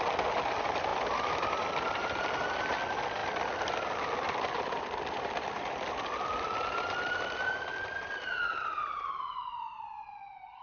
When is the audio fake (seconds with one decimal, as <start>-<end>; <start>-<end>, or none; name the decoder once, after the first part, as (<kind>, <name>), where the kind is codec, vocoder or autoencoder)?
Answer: none